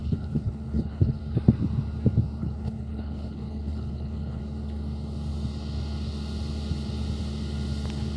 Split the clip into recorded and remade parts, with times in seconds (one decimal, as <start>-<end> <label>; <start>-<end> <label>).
0.0-1.2 remade; 1.2-2.4 recorded; 2.4-4.4 remade; 4.4-8.2 recorded

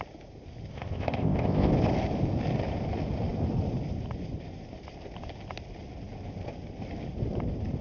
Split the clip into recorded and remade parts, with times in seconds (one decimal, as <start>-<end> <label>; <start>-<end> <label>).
0.0-0.7 recorded; 0.7-1.7 remade; 1.7-7.8 recorded

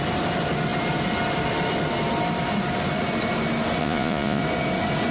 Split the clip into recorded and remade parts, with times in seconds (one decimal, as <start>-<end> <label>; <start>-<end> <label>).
0.0-3.8 recorded; 3.8-4.4 remade; 4.4-5.1 recorded